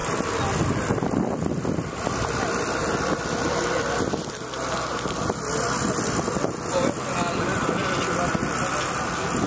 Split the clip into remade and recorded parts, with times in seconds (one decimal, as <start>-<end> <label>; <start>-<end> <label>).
0.0-1.4 remade; 1.4-2.8 recorded; 2.8-4.3 remade; 4.3-7.8 recorded; 7.8-9.1 remade; 9.1-9.5 recorded